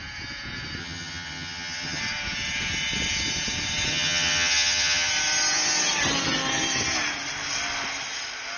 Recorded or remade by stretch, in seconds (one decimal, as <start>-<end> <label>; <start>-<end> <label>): 0.0-0.8 recorded; 0.8-2.0 remade; 2.0-3.9 recorded; 3.9-5.1 remade; 5.1-8.6 recorded